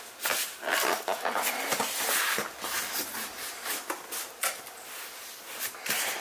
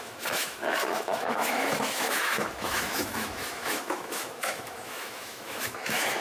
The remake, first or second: second